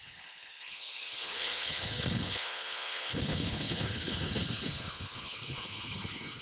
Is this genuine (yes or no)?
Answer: no